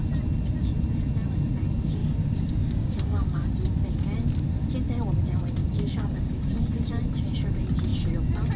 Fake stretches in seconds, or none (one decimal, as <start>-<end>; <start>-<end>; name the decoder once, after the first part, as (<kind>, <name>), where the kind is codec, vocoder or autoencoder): 2.0-3.5 (codec, DAC); 5.6-6.9